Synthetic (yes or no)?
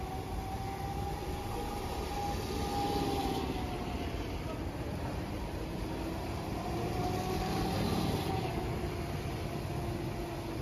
no